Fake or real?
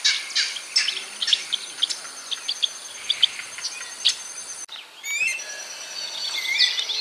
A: real